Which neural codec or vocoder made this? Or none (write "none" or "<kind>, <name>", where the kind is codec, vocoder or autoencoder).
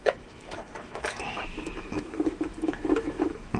autoencoder, DAC-VAE